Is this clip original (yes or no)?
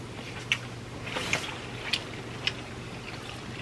yes